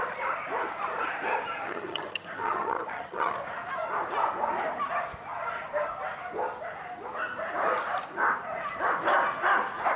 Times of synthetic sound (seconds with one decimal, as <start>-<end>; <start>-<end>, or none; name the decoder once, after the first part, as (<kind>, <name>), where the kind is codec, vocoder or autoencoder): 1.6-3.4 (vocoder, HiFi-GAN)